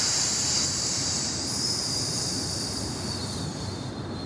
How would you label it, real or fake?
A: fake